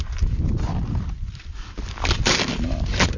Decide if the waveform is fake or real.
real